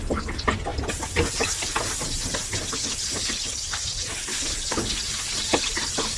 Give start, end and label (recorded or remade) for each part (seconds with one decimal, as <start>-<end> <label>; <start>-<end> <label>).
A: 0.0-2.7 recorded; 2.7-3.8 remade; 3.8-4.3 recorded; 4.3-5.0 remade; 5.0-6.2 recorded